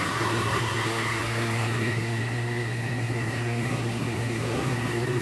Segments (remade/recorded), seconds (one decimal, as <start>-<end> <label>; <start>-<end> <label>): 0.0-5.2 remade